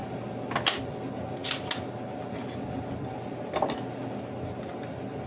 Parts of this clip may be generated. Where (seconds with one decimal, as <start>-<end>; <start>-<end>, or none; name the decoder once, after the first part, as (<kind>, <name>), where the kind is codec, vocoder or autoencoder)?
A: none